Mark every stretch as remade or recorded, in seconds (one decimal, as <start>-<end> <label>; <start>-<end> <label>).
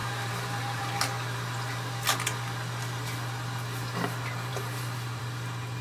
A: 0.0-0.8 remade; 0.8-4.5 recorded; 4.5-5.2 remade; 5.2-5.8 recorded